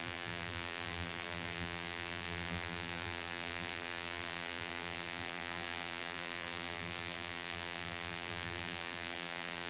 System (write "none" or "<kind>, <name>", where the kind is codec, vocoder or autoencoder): vocoder, BigVGAN v2